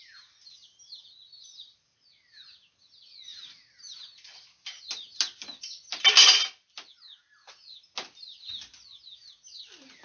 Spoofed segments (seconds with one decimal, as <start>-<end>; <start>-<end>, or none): none

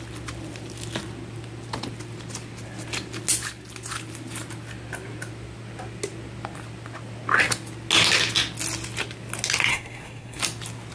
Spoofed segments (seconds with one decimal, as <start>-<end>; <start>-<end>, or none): 9.7-10.4

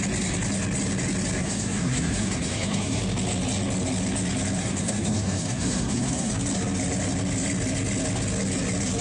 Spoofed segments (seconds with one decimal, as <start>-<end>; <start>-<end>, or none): 1.4-3.0; 4.6-6.3

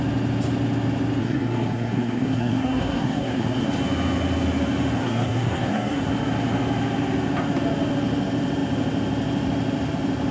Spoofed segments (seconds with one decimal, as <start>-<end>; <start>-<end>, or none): 1.2-3.7; 5.0-6.1

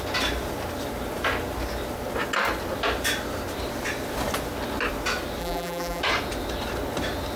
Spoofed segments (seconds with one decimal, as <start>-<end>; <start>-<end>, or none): 5.4-6.0